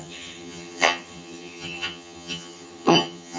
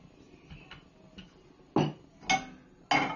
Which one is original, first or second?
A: second